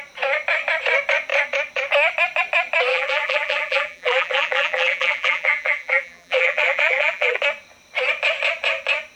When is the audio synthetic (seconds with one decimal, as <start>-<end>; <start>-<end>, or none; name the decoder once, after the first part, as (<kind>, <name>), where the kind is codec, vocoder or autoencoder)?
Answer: 2.9-7.4 (vocoder, BigVGAN v2)